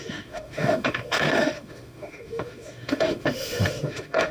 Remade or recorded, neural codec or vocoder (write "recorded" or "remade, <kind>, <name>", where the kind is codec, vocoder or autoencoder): remade, autoencoder, DAC-VAE